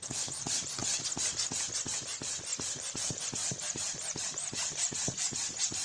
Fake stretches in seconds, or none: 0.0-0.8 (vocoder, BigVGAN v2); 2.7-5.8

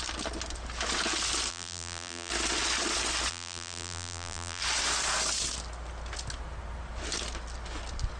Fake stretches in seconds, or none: 1.5-2.3 (vocoder, BigVGAN v2); 3.3-4.6

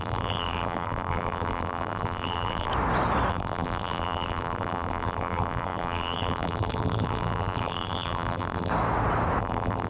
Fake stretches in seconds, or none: 0.0-2.7 (vocoder, BigVGAN v2); 3.3-8.7; 9.4-9.9

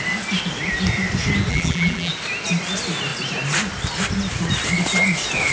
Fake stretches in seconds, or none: 1.5-2.1 (vocoder, BigVGAN v2)

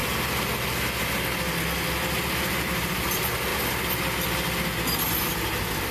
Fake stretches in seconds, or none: 2.5-3.5 (vocoder, BigVGAN v2); 5.2-5.9

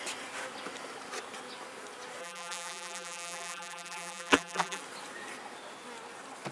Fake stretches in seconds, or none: 2.2-4.8 (vocoder, BigVGAN v2)

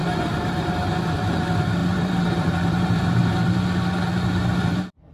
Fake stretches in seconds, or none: 0.0-1.2 (vocoder, BigVGAN v2); 1.8-3.3